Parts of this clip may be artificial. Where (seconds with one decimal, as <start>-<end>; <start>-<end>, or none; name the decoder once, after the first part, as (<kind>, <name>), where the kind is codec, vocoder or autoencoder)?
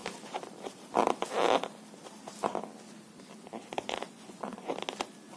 3.7-4.7 (vocoder, Vocos)